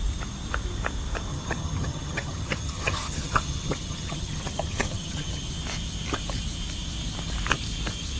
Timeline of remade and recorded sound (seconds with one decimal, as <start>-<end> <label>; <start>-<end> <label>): 0.0-1.3 recorded; 1.3-5.5 remade; 5.5-8.2 recorded